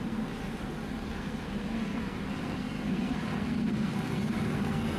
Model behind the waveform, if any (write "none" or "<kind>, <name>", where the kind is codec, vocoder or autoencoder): codec, SNAC